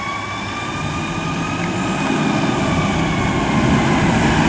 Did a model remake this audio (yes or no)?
no